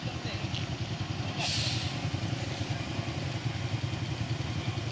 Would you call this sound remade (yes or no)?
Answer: no